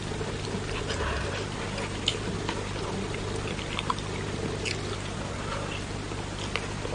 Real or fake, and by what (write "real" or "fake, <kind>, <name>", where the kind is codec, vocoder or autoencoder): real